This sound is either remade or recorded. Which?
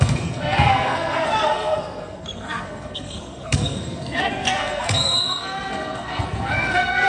remade